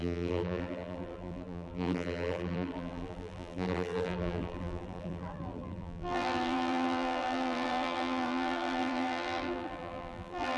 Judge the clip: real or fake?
fake